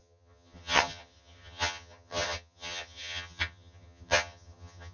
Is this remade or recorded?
remade